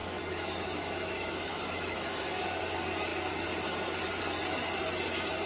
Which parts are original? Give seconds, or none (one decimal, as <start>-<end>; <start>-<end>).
2.6-5.5